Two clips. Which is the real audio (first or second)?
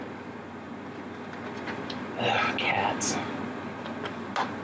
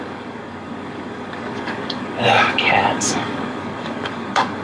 first